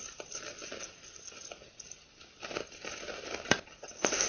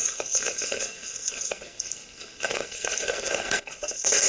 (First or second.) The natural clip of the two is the first